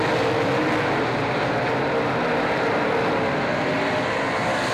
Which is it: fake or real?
real